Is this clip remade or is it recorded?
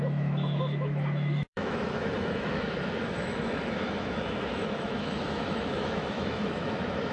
remade